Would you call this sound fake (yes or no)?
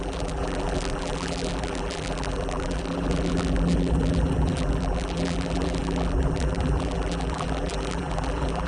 yes